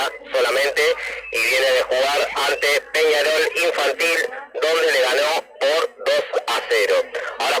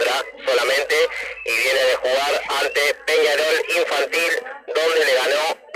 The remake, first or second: second